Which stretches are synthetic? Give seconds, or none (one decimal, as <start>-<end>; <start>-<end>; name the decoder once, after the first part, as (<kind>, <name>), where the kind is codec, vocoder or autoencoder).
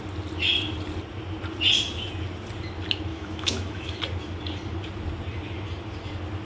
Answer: 3.1-4.0 (autoencoder, DAC-VAE)